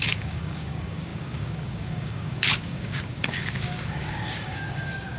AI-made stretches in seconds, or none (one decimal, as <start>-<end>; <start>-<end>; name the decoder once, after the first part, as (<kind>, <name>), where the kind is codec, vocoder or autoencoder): 0.0-5.2 (codec, DAC)